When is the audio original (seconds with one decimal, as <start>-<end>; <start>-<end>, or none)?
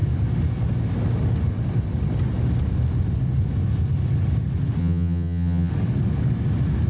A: 0.0-4.8; 5.7-6.9